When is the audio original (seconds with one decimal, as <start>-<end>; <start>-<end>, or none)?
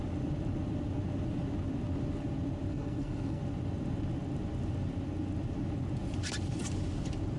0.0-2.7; 3.4-7.4